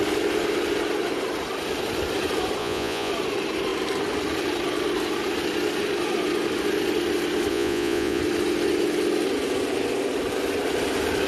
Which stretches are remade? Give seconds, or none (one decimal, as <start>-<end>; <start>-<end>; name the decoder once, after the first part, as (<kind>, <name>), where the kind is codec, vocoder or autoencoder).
2.6-3.1 (vocoder, Vocos); 7.5-8.2